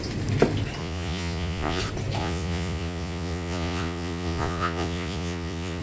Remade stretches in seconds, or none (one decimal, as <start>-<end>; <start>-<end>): 0.8-1.8; 2.2-5.8